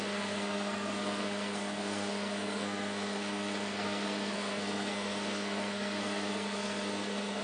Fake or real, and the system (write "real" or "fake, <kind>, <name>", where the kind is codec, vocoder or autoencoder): fake, codec, SNAC